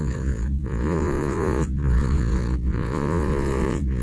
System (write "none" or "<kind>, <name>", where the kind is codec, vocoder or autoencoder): vocoder, Vocos